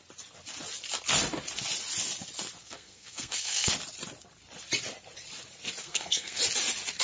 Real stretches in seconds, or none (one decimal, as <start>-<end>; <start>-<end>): 0.0-2.6; 3.7-5.8; 6.4-7.0